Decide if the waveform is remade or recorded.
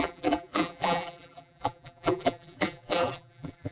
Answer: remade